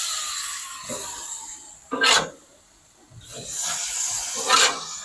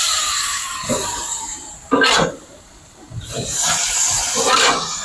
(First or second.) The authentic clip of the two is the first